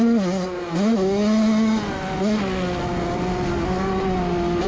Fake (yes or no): no